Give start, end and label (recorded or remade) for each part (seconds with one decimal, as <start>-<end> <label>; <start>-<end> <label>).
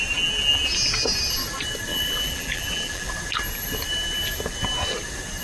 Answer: 0.0-1.9 recorded; 1.9-3.1 remade; 3.1-5.4 recorded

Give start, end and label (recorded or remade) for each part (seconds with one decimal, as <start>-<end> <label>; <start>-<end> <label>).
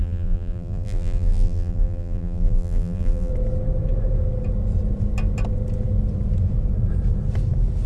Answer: 0.0-3.3 remade; 3.3-7.9 recorded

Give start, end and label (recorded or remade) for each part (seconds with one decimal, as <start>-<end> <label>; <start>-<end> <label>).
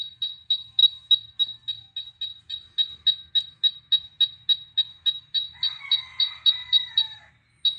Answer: 0.0-6.6 recorded; 6.6-7.3 remade; 7.3-7.8 recorded